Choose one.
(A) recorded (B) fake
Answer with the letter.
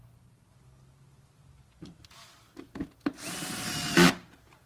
A